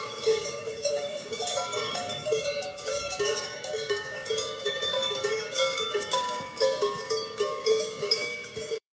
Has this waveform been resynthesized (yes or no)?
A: yes